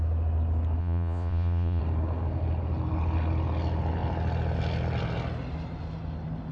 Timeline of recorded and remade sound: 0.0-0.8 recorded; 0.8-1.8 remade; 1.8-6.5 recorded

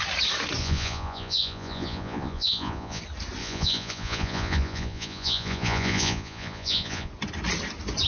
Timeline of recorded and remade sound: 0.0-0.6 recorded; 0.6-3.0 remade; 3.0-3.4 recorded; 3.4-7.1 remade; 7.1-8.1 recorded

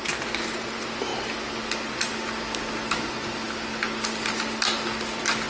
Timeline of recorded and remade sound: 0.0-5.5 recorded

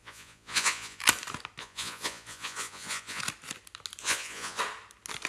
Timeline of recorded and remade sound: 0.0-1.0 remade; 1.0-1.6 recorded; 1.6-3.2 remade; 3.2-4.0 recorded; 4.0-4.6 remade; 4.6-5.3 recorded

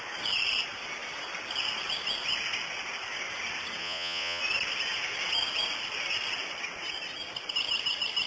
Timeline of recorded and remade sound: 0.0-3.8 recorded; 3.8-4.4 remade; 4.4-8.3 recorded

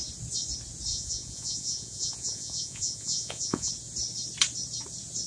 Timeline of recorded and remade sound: 0.0-0.9 recorded; 0.9-3.7 remade; 3.7-5.3 recorded

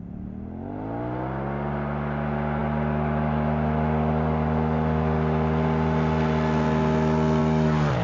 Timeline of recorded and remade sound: 0.0-8.0 recorded

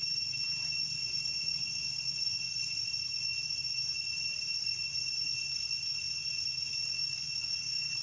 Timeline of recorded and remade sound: 0.0-1.6 recorded; 1.6-2.6 remade; 2.6-7.0 recorded; 7.0-8.0 remade